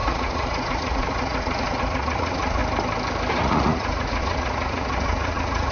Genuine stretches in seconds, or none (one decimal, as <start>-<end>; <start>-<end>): 2.6-3.3